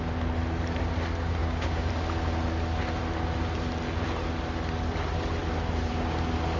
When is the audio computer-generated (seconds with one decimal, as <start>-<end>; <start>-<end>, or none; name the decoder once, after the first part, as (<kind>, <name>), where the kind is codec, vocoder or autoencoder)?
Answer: 1.4-1.9 (codec, DAC)